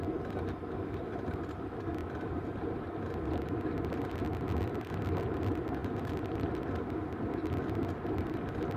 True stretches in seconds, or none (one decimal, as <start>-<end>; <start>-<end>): 0.0-8.8